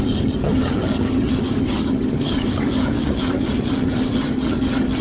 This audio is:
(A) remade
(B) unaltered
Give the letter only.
A